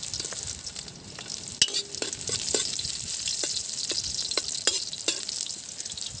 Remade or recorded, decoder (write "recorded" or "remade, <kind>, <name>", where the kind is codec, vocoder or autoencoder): recorded